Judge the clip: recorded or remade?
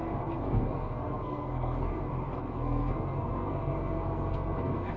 remade